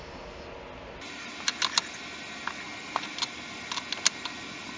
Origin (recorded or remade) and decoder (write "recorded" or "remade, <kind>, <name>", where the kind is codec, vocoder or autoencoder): recorded